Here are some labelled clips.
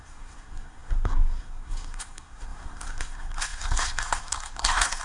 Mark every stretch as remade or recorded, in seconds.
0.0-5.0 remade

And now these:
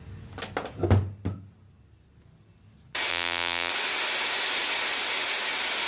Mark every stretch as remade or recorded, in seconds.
0.0-3.1 recorded; 3.1-3.7 remade; 3.7-5.9 recorded

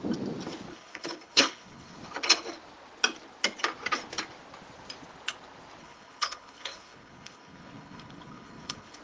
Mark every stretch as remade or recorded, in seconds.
0.0-0.7 recorded; 0.7-2.0 remade; 2.0-5.8 recorded; 5.8-9.0 remade

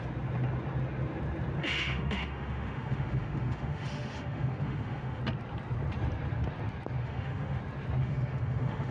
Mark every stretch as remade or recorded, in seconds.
0.0-1.6 recorded; 1.6-5.2 remade; 5.2-7.0 recorded; 7.0-7.6 remade; 7.6-8.0 recorded; 8.0-8.9 remade

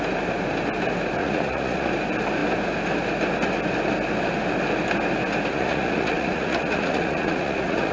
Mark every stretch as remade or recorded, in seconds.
0.0-1.2 recorded; 1.2-1.9 remade; 1.9-5.5 recorded; 5.5-7.9 remade